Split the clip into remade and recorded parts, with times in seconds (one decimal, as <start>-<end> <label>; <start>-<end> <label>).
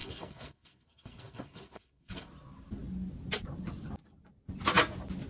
0.0-2.3 remade; 2.3-5.3 recorded